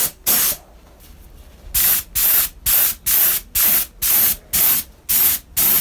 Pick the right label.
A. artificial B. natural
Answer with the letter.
B